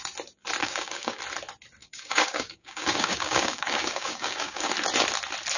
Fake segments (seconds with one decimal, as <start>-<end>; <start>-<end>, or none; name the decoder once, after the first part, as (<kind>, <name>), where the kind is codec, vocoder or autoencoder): 0.6-1.2 (codec, DAC); 1.8-4.7